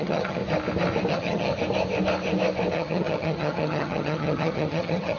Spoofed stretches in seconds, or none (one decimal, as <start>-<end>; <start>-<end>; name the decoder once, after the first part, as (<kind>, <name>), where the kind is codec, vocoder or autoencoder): 0.0-0.4 (vocoder, HiFi-GAN); 1.1-1.5; 2.7-5.2